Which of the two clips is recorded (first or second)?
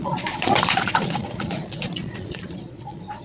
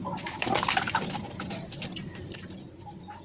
second